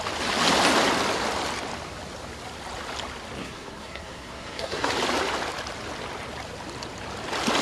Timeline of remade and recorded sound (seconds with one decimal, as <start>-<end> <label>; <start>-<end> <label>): 0.0-3.4 recorded; 3.4-4.9 remade; 4.9-7.6 recorded